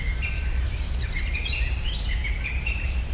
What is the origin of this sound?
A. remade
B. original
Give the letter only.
A